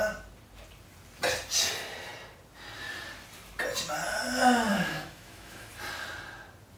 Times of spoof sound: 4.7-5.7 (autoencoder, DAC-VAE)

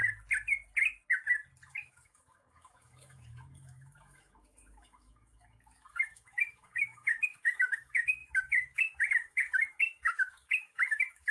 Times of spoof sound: 1.7-11.3 (autoencoder, DAC-VAE)

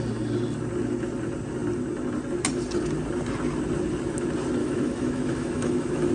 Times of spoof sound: 4.6-6.1 (autoencoder, DAC-VAE)